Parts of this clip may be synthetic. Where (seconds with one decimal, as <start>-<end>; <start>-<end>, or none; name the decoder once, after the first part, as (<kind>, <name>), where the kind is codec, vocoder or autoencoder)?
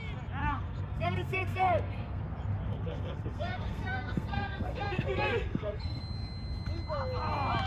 0.4-2.2 (codec, SNAC); 2.7-6.0